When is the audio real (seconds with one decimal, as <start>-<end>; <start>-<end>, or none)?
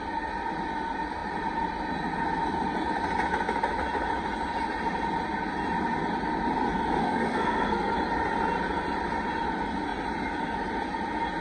0.0-7.0; 7.9-11.4